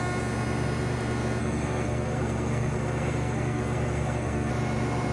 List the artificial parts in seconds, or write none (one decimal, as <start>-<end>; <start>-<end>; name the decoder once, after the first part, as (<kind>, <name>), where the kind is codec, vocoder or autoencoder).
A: 1.4-4.5 (codec, SNAC)